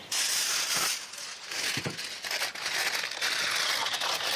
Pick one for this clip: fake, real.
real